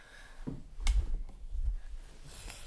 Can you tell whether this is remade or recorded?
recorded